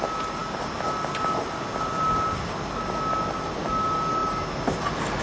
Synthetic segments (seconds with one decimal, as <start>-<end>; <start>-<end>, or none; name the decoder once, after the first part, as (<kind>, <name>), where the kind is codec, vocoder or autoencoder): none